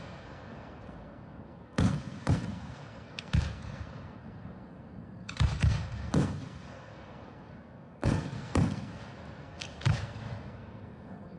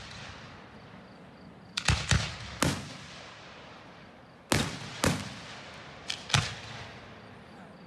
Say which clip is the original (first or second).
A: second